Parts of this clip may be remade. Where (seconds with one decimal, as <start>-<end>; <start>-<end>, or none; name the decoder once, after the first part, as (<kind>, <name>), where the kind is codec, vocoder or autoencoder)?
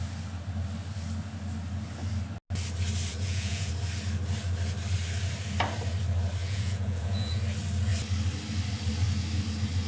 3.1-3.7 (vocoder, Vocos); 6.4-7.4